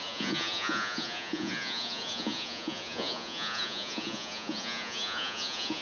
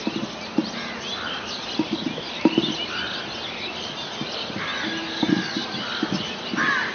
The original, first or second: second